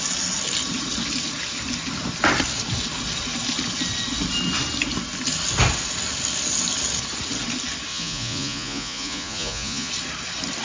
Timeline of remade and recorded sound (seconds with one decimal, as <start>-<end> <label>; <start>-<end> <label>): 0.0-7.9 recorded; 7.9-9.9 remade; 9.9-10.6 recorded